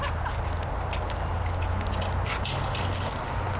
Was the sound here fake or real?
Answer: real